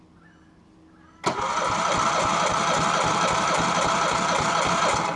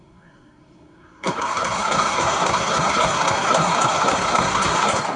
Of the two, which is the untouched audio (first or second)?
first